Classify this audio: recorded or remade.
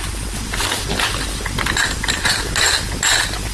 recorded